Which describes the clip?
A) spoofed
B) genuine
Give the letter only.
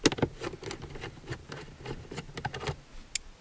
B